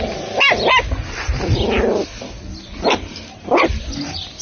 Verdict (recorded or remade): recorded